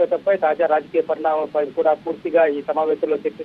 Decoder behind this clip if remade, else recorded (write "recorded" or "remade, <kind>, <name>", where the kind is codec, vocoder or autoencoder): remade, vocoder, BigVGAN v2